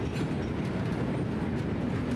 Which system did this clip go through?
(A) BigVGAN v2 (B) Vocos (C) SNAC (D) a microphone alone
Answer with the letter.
D